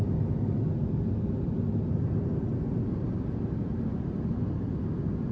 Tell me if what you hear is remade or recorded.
recorded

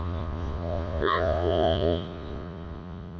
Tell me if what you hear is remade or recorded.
remade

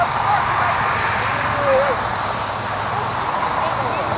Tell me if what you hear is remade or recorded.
recorded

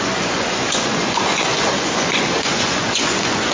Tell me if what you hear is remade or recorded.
remade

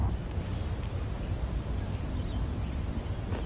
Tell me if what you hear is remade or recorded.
recorded